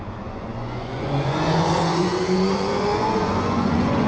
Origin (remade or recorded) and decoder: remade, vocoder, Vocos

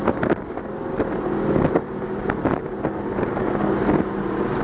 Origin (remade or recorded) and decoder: recorded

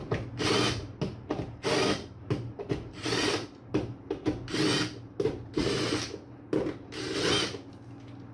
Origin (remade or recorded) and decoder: recorded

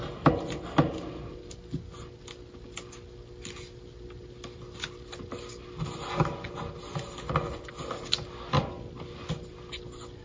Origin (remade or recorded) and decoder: recorded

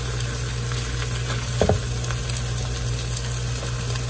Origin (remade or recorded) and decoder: recorded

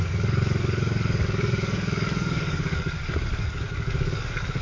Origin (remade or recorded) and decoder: remade, codec, DAC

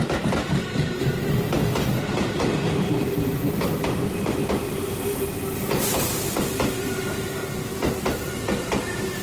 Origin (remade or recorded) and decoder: recorded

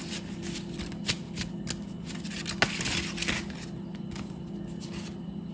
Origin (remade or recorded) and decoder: recorded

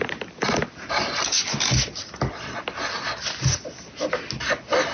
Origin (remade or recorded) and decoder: recorded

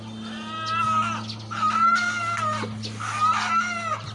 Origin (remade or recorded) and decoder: recorded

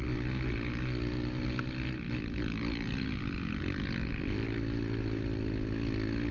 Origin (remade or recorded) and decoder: recorded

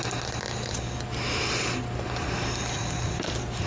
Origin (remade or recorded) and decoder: recorded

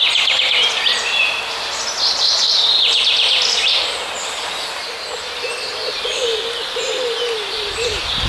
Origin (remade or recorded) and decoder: recorded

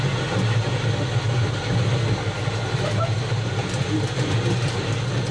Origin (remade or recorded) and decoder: recorded